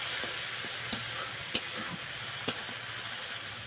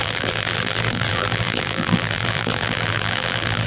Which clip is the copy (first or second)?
second